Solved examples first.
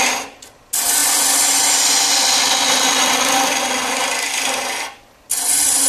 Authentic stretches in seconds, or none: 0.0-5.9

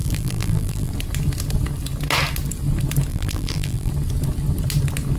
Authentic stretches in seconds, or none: 0.9-3.1; 3.9-5.2

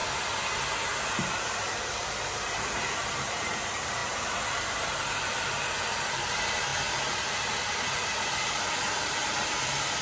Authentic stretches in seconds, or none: 0.0-1.2

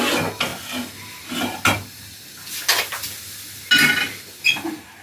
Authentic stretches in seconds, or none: 0.0-5.0

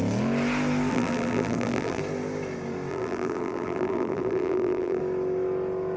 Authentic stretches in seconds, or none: 0.0-0.9; 2.0-2.9; 5.0-6.0

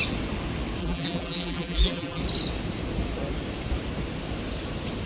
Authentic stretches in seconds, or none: 0.0-0.8; 2.2-5.1

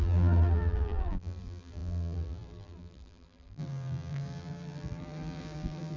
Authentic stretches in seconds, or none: none